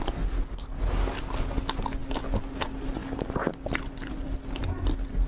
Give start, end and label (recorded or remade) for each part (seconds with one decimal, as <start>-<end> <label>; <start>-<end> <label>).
0.0-5.3 recorded